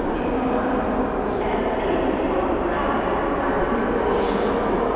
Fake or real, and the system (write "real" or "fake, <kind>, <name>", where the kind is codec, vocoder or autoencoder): real